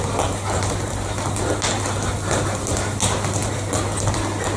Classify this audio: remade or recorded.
recorded